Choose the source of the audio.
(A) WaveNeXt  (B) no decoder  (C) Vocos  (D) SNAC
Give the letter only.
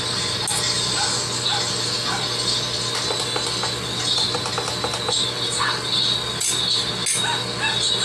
B